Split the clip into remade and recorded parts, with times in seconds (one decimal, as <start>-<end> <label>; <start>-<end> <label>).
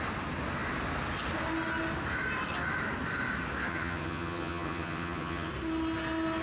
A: 0.0-3.7 recorded; 3.7-5.5 remade; 5.5-6.4 recorded